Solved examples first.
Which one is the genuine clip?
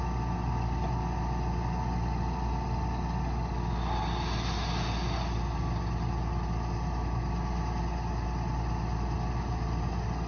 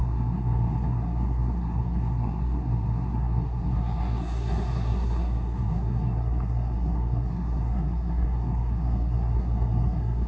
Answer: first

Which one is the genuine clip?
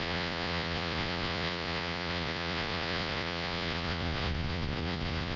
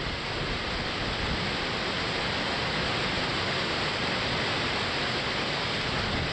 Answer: second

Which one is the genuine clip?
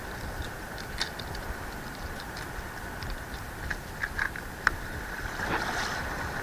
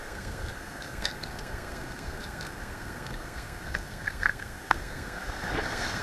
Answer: first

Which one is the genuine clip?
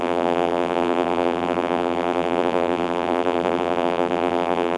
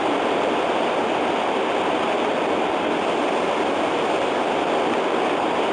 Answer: second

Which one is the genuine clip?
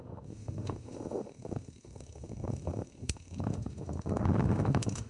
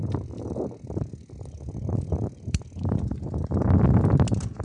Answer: second